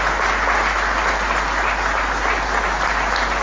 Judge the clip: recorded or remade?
recorded